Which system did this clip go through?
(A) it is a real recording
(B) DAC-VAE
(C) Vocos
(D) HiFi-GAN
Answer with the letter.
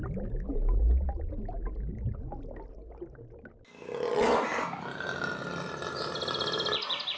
A